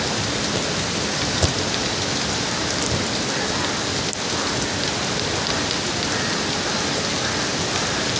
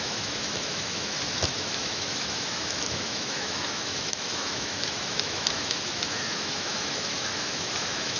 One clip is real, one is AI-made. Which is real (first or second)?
first